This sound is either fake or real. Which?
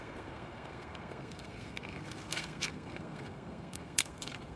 fake